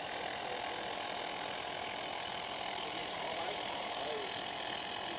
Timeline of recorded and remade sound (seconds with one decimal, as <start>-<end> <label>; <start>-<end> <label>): 0.0-3.0 recorded; 3.0-4.0 remade; 4.0-5.2 recorded